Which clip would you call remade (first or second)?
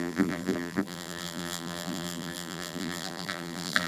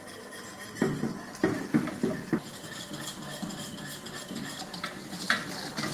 first